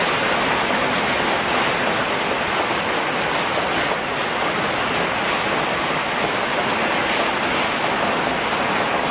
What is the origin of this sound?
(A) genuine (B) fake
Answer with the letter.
A